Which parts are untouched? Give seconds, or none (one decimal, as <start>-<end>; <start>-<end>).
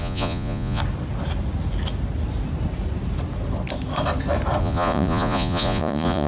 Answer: 0.8-4.6